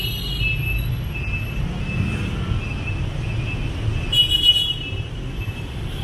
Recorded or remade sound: recorded